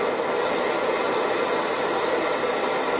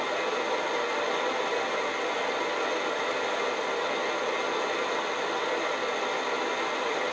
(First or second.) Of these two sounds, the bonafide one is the second